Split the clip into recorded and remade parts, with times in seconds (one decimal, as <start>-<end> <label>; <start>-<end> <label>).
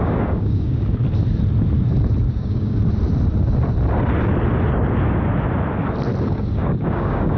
0.0-1.0 remade; 1.0-2.3 recorded; 2.3-2.8 remade; 2.8-6.2 recorded; 6.2-7.4 remade